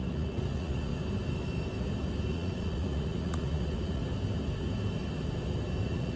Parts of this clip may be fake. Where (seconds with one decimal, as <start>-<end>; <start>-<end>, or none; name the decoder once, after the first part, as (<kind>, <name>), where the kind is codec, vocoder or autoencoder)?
0.0-0.9 (vocoder, Vocos); 2.3-4.0; 5.8-6.2